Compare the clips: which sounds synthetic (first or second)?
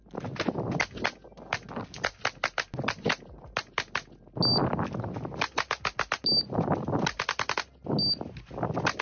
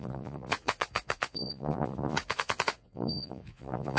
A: second